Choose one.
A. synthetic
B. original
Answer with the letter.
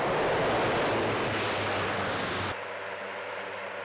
B